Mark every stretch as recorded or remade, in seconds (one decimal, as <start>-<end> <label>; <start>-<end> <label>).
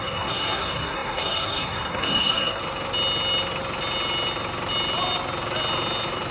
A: 0.0-2.6 remade; 2.6-6.3 recorded